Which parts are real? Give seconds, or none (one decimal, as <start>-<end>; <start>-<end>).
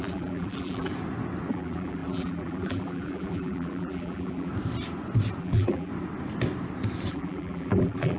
0.9-1.5; 4.5-5.4; 5.9-7.1